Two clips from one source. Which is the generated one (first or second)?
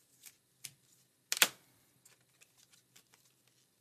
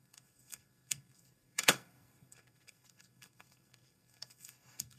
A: second